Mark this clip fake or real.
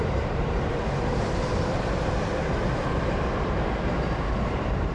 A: fake